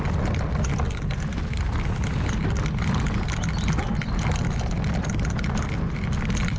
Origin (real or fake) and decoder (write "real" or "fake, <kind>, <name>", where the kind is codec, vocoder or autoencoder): real